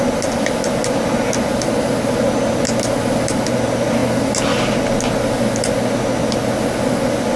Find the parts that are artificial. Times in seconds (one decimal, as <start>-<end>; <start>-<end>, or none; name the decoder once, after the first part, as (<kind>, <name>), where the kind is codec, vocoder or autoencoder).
none